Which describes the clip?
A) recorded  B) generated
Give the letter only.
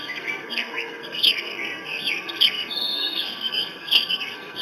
B